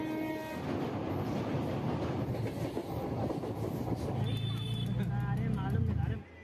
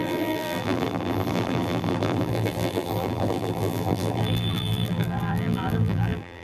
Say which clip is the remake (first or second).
second